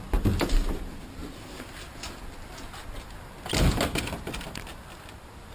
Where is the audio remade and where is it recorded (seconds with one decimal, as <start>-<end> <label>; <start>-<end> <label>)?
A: 0.0-5.5 recorded